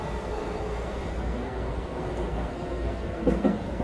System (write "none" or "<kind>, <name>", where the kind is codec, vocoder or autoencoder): codec, SNAC